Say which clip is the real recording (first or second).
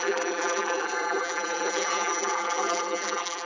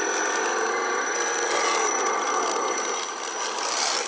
second